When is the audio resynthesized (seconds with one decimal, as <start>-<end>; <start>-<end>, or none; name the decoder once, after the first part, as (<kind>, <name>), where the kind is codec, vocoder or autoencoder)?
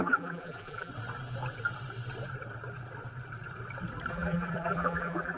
0.0-0.9 (vocoder, BigVGAN v2); 4.1-5.4